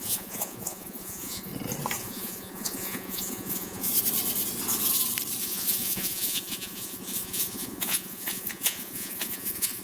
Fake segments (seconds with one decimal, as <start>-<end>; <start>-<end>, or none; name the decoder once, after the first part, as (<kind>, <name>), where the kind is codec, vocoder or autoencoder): 0.0-1.5 (vocoder, Vocos); 2.0-3.9; 5.4-9.8

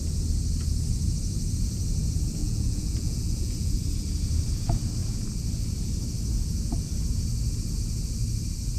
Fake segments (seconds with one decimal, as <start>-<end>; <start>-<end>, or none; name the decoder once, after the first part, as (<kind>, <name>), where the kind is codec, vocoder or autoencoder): 2.4-3.8 (vocoder, Vocos)

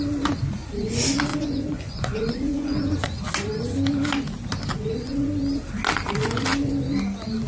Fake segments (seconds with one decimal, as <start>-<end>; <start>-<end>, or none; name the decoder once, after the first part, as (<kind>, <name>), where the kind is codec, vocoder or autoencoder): 1.3-3.2 (vocoder, Vocos); 4.7-5.3

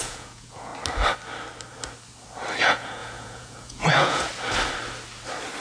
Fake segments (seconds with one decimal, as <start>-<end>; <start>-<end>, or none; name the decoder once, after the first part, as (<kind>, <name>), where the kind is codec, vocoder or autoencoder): 0.0-0.7 (vocoder, Vocos); 2.6-4.3

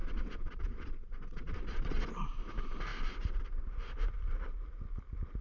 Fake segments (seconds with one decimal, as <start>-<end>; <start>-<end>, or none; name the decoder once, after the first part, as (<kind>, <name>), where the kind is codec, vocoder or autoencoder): 0.0-2.0 (vocoder, Vocos)

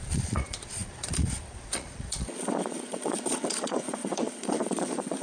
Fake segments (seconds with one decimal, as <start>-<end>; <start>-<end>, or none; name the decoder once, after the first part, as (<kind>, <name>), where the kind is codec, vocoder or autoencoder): 0.0-5.2 (vocoder, Vocos)

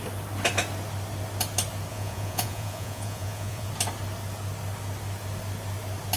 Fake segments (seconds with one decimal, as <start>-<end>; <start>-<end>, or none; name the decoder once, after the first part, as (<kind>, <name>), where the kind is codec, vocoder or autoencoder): 1.9-3.7 (vocoder, Vocos)